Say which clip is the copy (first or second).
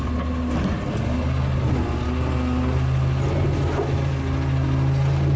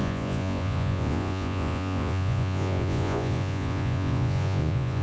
second